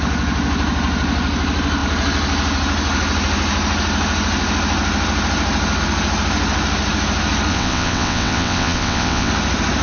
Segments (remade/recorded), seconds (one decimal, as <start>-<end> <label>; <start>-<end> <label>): 0.0-7.5 recorded; 7.5-9.3 remade; 9.3-9.8 recorded